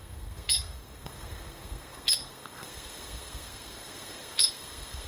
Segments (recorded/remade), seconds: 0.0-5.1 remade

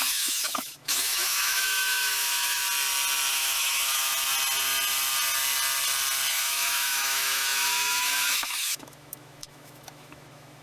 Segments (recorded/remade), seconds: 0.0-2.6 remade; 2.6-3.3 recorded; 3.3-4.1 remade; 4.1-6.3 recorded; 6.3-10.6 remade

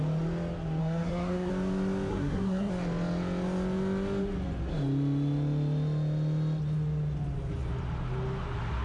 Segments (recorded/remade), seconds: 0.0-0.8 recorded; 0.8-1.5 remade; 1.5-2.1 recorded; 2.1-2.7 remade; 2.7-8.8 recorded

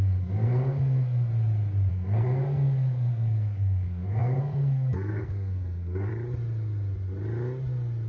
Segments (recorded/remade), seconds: 0.0-1.3 remade; 1.3-1.9 recorded; 1.9-6.1 remade; 6.1-8.1 recorded

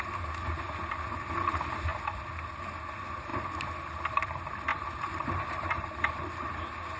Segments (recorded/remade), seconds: 0.0-4.7 recorded; 4.7-5.9 remade; 5.9-7.0 recorded

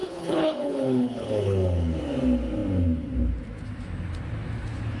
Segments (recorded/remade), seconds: 0.0-2.0 remade; 2.0-5.0 recorded

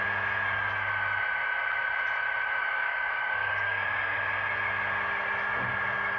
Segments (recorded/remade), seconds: 0.0-2.6 recorded; 2.6-4.3 remade; 4.3-6.2 recorded